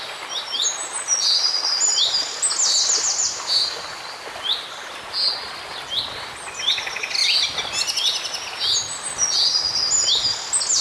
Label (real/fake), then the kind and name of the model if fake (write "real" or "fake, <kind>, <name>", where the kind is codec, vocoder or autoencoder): real